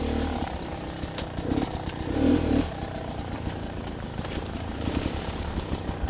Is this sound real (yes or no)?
no